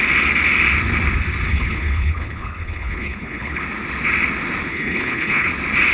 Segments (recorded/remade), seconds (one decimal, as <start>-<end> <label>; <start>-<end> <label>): 0.0-1.5 recorded; 1.5-3.6 remade; 3.6-4.7 recorded; 4.7-5.5 remade; 5.5-5.9 recorded